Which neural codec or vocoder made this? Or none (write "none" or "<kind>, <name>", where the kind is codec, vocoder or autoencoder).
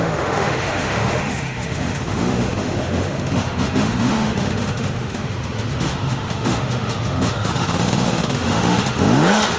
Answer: autoencoder, DAC-VAE